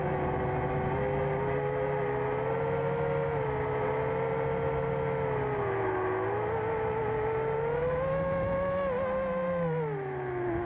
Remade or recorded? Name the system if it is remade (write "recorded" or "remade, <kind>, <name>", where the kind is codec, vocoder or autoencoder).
recorded